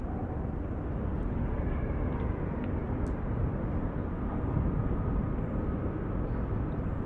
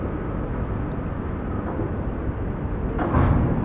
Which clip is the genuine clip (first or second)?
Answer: second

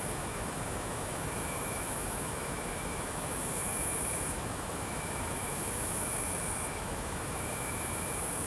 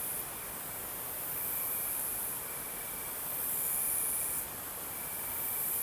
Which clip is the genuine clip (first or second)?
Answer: second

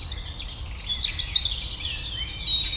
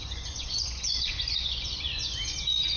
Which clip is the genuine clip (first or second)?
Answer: first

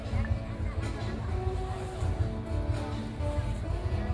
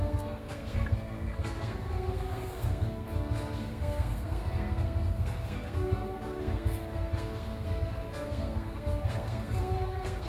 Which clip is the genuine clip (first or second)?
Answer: first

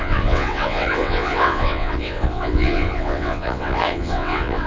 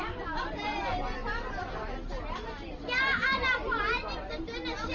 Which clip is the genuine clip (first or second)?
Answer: second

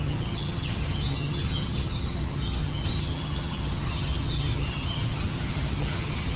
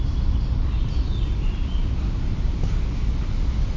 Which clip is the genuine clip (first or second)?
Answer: second